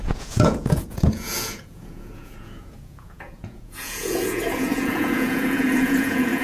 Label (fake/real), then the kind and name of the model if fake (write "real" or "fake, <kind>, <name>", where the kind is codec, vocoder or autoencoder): fake, vocoder, Vocos